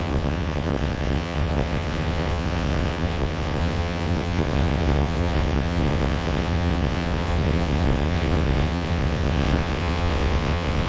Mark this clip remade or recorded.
remade